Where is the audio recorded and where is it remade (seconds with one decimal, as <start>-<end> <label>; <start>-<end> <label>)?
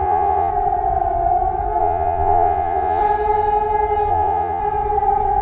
0.0-0.5 remade; 0.5-1.8 recorded; 1.8-3.0 remade; 3.0-4.1 recorded; 4.1-4.6 remade; 4.6-5.4 recorded